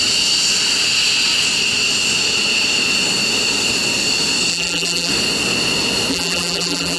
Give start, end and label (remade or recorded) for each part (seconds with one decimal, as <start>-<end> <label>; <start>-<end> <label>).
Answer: 0.0-4.5 recorded; 4.5-5.1 remade; 5.1-6.1 recorded; 6.1-7.0 remade